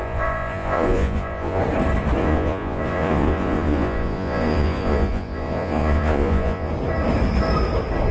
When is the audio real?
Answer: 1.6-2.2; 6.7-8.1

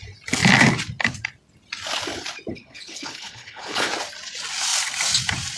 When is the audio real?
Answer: 0.0-2.5; 3.9-5.6